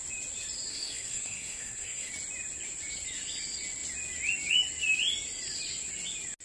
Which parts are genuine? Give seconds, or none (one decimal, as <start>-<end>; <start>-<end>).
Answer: 0.0-0.7; 2.1-6.4